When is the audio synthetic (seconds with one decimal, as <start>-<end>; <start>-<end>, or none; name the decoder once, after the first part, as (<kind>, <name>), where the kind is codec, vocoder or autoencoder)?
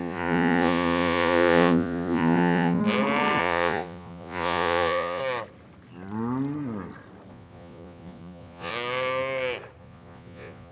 0.0-2.8 (vocoder, Vocos); 3.4-5.2; 7.3-8.7; 9.8-10.7